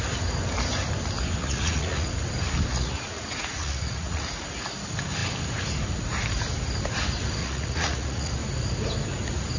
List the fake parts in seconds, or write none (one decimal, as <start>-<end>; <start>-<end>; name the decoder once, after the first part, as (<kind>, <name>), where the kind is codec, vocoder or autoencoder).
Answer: 1.4-2.1 (vocoder, Vocos); 2.7-4.4; 7.4-8.3